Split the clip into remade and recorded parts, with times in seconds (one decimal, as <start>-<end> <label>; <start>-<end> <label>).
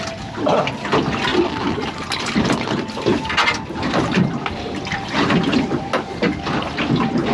0.0-7.3 recorded